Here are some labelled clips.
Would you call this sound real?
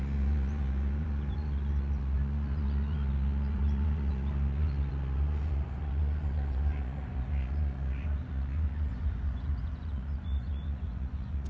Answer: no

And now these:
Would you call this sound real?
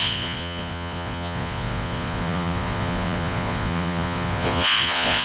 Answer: no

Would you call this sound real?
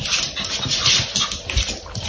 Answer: yes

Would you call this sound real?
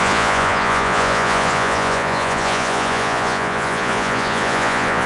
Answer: no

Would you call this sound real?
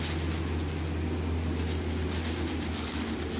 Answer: yes